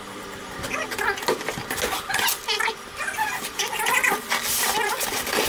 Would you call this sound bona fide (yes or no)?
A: yes